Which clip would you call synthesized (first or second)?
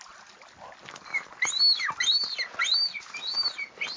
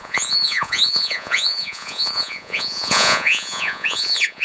second